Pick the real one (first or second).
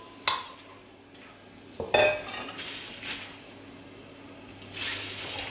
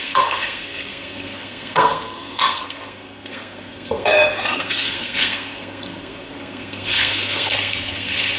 first